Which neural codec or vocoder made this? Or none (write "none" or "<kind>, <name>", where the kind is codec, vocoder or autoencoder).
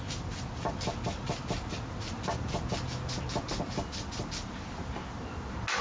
none